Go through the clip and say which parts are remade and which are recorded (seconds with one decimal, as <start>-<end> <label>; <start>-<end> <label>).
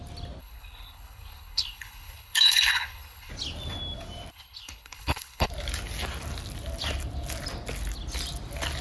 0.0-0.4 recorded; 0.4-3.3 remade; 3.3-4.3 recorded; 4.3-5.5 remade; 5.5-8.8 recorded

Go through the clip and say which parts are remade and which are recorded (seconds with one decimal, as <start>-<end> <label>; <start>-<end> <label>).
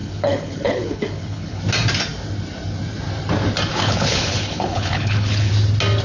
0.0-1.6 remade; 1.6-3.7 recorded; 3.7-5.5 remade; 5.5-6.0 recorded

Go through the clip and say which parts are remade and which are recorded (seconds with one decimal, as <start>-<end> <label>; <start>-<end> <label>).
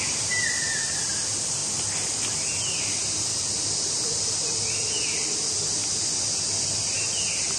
0.0-7.6 recorded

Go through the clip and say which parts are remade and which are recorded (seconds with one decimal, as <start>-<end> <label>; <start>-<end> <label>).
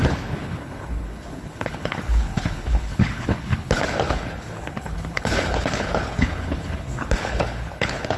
0.0-8.2 remade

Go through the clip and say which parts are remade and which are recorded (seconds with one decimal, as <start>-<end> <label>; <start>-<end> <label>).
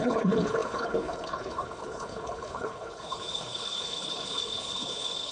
0.0-5.3 remade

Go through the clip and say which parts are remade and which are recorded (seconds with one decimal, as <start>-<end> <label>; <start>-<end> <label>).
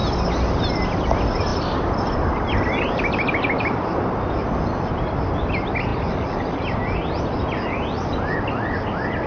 0.0-9.3 recorded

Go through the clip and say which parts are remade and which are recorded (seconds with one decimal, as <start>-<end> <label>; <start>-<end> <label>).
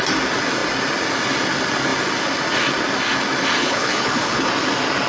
0.0-3.6 recorded; 3.6-4.5 remade; 4.5-5.1 recorded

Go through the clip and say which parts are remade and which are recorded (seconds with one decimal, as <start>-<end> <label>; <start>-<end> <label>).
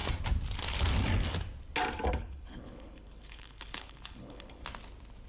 0.0-2.1 recorded; 2.1-4.6 remade; 4.6-5.3 recorded